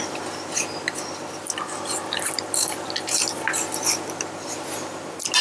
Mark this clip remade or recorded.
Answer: recorded